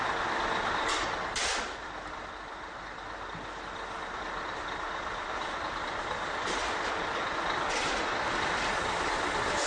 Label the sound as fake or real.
real